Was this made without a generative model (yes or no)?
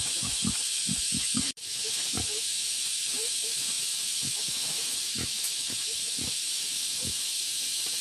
no